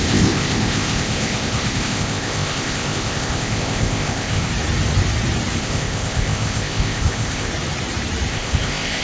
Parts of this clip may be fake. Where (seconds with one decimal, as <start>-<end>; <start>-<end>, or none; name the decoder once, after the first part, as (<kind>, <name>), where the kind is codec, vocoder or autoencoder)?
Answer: 0.0-4.5 (codec, ZipCodec); 5.6-7.5; 8.3-9.0